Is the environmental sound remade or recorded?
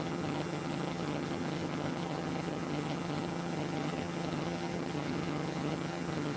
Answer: remade